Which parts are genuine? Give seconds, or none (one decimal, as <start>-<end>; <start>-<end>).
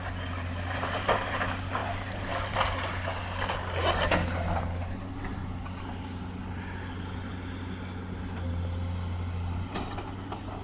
0.0-10.6